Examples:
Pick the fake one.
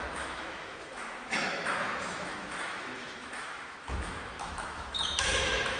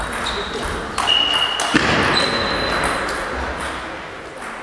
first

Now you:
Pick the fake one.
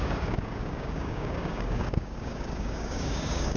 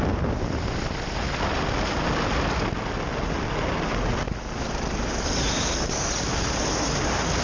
first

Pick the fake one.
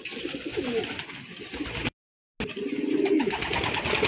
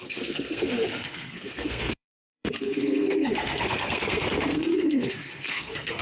second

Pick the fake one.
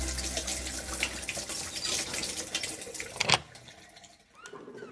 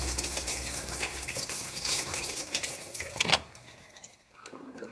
second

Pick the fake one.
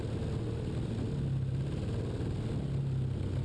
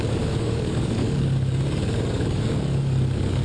second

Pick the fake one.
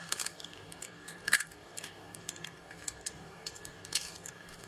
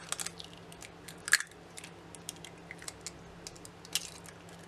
first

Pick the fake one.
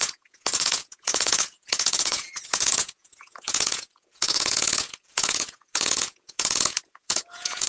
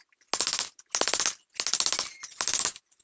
first